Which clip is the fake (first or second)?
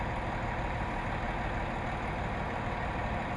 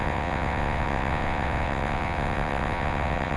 second